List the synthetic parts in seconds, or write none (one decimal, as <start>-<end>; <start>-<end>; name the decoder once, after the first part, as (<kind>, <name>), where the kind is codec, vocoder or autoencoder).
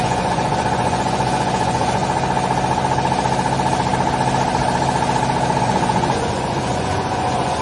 0.0-2.0 (vocoder, Vocos); 5.6-7.6